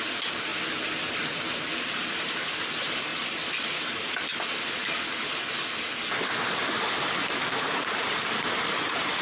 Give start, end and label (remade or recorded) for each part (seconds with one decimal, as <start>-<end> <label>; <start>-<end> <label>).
0.0-0.5 remade; 0.5-1.9 recorded; 1.9-3.1 remade; 3.1-6.9 recorded; 6.9-9.2 remade